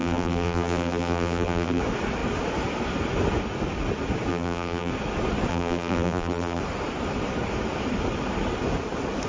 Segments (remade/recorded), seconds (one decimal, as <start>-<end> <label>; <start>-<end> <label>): 0.0-1.8 remade; 1.8-4.3 recorded; 4.3-4.9 remade; 4.9-5.5 recorded; 5.5-6.6 remade; 6.6-9.3 recorded